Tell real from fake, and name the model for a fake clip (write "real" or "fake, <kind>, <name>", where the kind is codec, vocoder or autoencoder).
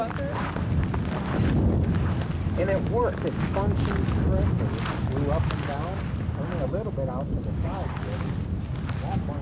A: real